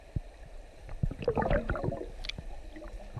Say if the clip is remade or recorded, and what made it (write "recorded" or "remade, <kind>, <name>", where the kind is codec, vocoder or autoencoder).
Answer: recorded